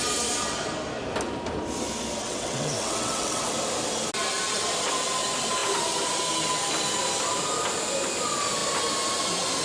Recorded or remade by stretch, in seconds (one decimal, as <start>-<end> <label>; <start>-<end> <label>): 0.0-2.2 recorded; 2.2-3.5 remade; 3.5-9.6 recorded